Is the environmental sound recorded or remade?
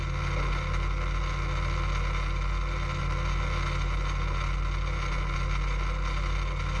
recorded